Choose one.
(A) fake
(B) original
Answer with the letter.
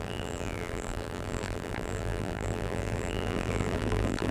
A